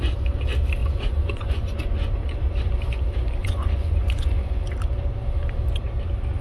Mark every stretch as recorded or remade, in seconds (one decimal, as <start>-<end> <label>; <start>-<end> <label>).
0.0-0.8 recorded; 0.8-2.1 remade; 2.1-3.4 recorded; 3.4-4.6 remade; 4.6-6.4 recorded